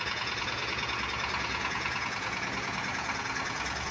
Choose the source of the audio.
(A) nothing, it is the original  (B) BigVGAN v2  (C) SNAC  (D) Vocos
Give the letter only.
D